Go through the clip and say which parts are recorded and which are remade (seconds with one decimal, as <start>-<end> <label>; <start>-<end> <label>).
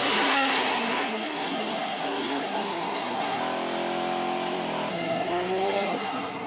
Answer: 0.0-3.4 remade; 3.4-4.9 recorded; 4.9-6.5 remade